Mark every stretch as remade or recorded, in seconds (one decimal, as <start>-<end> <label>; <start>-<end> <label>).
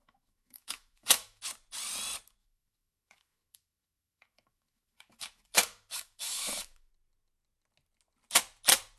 0.0-1.4 remade; 1.4-2.4 recorded; 2.4-6.9 remade; 6.9-9.0 recorded